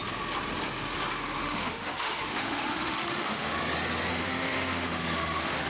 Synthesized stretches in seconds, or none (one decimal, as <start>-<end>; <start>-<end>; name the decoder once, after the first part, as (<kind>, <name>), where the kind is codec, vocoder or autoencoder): 1.4-3.6 (autoencoder, DAC-VAE); 4.1-5.7